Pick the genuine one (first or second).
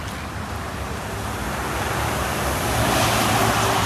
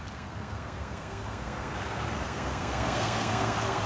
first